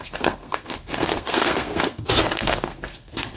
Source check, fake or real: fake